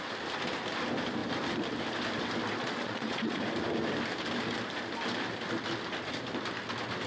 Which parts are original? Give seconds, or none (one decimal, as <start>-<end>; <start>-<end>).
0.0-2.6; 3.4-7.1